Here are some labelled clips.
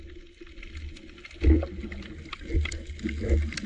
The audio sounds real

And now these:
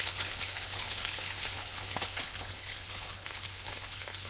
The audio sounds fake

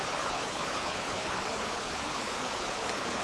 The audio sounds fake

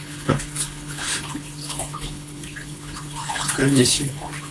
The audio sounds fake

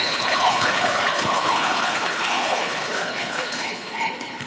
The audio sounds fake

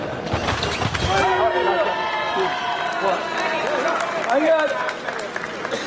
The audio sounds real